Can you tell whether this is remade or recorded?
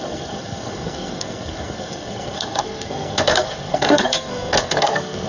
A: remade